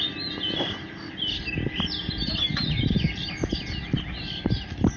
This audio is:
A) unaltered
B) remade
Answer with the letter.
A